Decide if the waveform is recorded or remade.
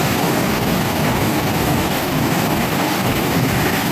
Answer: remade